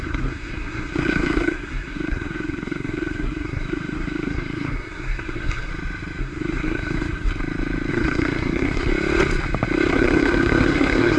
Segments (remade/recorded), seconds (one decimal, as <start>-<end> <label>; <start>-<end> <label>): 0.0-5.7 remade; 5.7-6.2 recorded; 6.2-7.3 remade; 7.3-7.9 recorded; 7.9-8.9 remade; 8.9-9.9 recorded; 9.9-11.2 remade